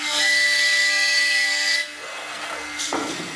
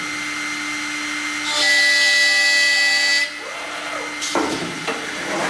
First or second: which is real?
second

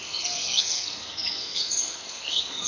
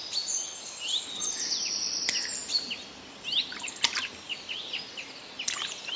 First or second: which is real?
second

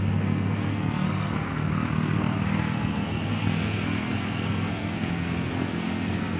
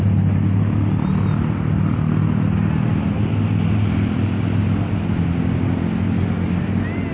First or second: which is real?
second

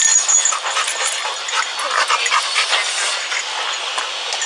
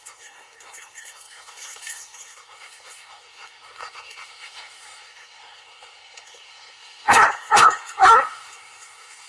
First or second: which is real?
first